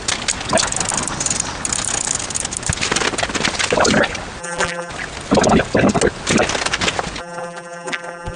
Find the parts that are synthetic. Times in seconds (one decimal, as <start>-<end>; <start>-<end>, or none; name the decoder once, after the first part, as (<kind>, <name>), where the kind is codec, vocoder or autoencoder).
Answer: 4.4-4.9 (vocoder, BigVGAN v2); 7.2-8.4